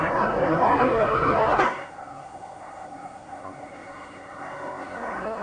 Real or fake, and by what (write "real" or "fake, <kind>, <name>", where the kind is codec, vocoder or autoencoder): fake, codec, SNAC